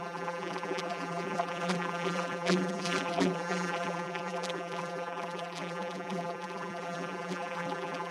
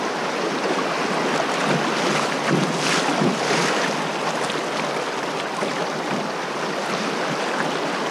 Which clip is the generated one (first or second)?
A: first